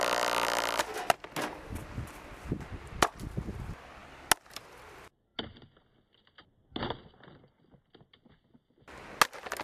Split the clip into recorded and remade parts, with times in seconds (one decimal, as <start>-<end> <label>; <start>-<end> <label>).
0.0-9.6 recorded